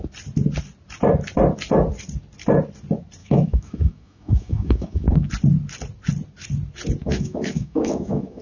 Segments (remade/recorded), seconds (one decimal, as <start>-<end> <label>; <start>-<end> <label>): 0.0-3.2 recorded; 3.2-5.1 remade; 5.1-7.0 recorded; 7.0-8.4 remade